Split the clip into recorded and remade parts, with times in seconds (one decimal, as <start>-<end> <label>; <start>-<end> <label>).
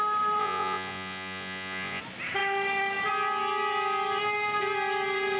0.0-0.4 recorded; 0.4-2.0 remade; 2.0-5.4 recorded